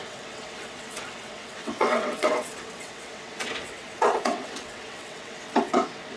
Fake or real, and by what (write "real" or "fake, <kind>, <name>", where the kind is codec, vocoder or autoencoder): fake, vocoder, WaveNeXt